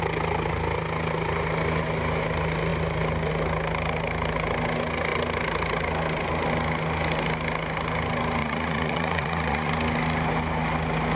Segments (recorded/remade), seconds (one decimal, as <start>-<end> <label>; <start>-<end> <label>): 0.0-8.4 recorded; 8.4-9.7 remade; 9.7-11.2 recorded